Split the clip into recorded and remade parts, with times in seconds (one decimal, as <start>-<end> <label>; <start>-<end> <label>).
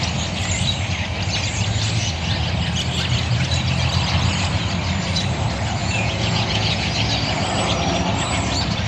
0.0-5.8 recorded; 5.8-6.9 remade; 6.9-8.9 recorded